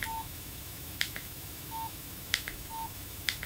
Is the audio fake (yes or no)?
yes